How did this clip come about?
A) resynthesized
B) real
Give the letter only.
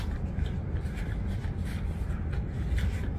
B